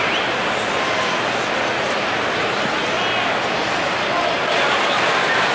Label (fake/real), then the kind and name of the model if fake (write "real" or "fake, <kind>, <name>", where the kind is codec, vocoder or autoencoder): real